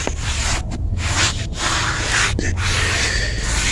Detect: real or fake real